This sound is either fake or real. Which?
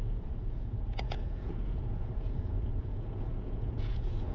fake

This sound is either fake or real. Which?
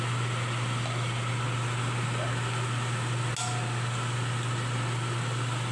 real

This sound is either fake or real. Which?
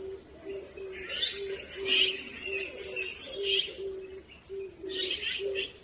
real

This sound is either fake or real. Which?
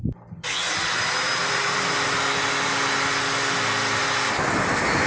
real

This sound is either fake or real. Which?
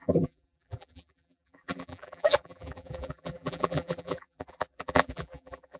fake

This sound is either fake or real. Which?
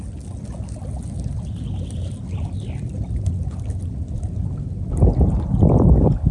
real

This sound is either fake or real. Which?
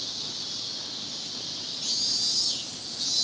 real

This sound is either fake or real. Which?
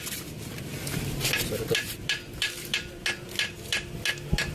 real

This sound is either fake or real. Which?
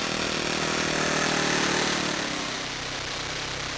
real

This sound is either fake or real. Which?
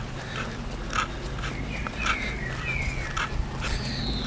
real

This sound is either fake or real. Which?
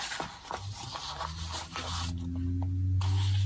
real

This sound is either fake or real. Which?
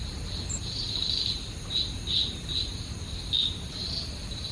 real